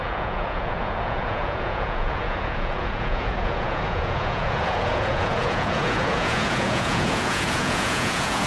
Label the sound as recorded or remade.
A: remade